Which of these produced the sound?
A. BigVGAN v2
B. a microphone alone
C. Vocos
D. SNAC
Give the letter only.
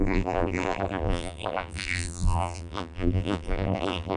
A